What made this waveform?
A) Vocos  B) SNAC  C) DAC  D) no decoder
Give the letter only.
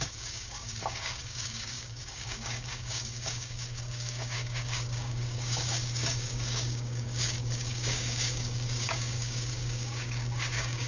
C